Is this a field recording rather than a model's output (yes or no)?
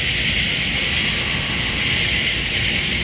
yes